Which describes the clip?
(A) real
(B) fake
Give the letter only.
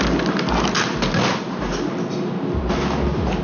A